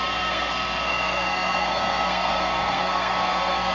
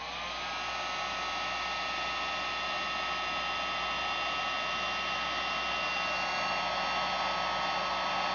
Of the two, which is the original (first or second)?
second